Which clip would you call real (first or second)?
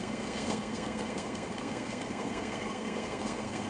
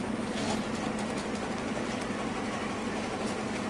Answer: second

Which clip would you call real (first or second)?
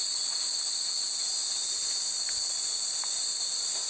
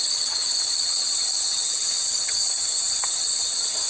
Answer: first